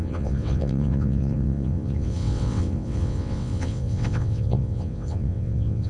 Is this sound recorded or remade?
remade